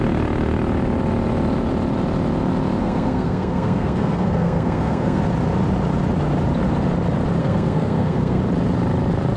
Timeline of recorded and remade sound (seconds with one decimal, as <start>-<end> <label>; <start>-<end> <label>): 0.0-2.8 recorded; 2.8-5.2 remade; 5.2-7.4 recorded; 7.4-8.4 remade; 8.4-9.4 recorded

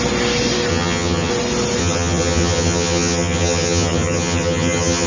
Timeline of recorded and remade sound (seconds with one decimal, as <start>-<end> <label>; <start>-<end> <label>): 0.0-0.7 recorded; 0.7-1.3 remade; 1.3-1.8 recorded; 1.8-5.1 remade

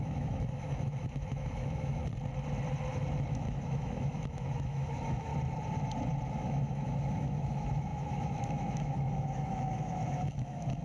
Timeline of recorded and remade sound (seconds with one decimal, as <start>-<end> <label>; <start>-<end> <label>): 0.0-2.0 remade; 2.0-3.3 recorded; 3.3-5.3 remade; 5.3-6.3 recorded; 6.3-10.8 remade

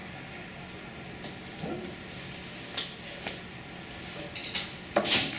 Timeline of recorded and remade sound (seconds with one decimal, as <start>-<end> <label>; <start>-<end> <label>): 0.0-5.4 recorded

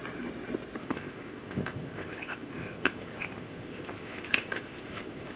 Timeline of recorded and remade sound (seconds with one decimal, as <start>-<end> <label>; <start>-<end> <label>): 0.0-0.8 recorded; 0.8-5.4 remade

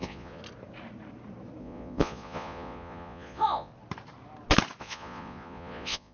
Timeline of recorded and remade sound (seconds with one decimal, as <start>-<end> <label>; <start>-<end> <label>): 0.0-0.4 remade; 0.4-1.6 recorded; 1.6-3.7 remade; 3.7-4.8 recorded; 4.8-6.1 remade